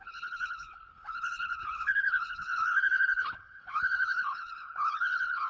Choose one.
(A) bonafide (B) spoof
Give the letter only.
B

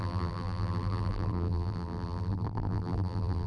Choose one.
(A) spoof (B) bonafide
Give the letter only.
A